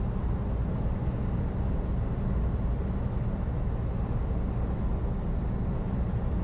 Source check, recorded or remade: recorded